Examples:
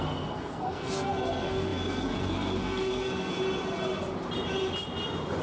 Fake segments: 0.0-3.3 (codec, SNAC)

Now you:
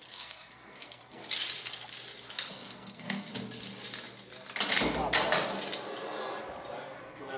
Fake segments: 0.0-1.2 (codec, SNAC); 2.5-3.3; 7.0-7.4